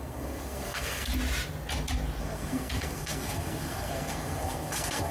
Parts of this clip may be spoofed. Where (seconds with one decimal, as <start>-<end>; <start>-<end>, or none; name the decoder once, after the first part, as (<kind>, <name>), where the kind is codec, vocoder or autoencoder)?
0.0-1.1 (codec, SNAC); 2.2-5.1